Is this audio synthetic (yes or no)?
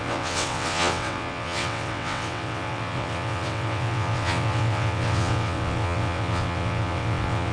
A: yes